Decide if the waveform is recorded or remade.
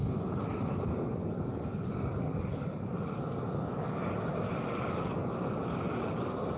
recorded